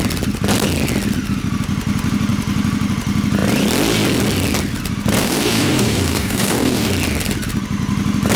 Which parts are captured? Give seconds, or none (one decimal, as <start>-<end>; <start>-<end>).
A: 0.0-5.2; 6.9-8.4